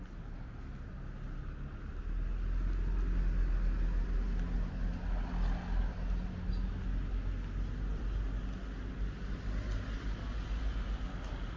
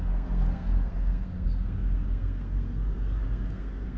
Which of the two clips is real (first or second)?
first